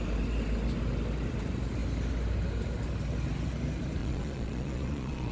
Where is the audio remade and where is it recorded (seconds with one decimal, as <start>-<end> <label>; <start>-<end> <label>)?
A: 0.0-4.0 recorded; 4.0-5.3 remade